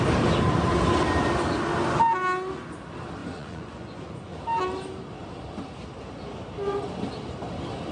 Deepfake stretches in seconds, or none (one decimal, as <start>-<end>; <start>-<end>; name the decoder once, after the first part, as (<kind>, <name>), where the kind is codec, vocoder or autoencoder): 3.2-4.4 (vocoder, Vocos)